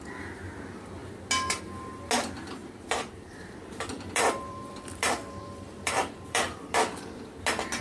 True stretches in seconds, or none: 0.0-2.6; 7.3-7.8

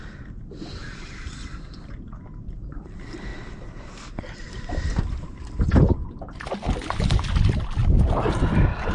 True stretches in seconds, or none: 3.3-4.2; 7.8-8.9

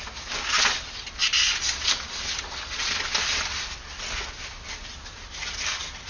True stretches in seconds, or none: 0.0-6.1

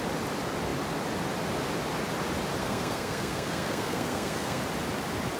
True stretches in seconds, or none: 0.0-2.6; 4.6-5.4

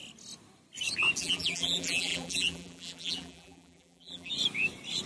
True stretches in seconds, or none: 0.0-1.2; 4.3-5.1

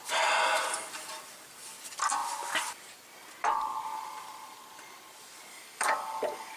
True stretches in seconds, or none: 0.0-5.5